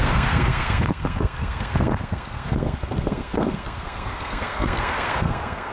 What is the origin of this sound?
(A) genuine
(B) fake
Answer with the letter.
B